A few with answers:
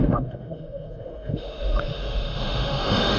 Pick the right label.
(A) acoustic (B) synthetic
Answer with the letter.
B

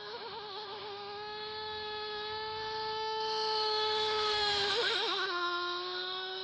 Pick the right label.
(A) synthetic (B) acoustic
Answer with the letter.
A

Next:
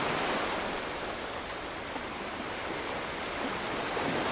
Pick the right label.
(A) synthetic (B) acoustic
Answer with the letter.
B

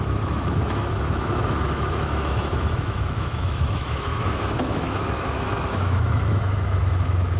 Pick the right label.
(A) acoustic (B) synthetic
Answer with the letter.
B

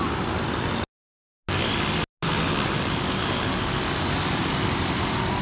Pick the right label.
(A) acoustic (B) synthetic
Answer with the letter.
A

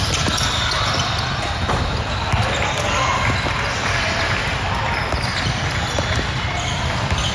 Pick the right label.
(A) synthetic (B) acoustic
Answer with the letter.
B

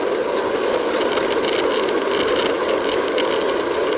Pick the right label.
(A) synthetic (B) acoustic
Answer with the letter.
B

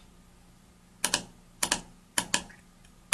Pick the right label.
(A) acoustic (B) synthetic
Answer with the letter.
A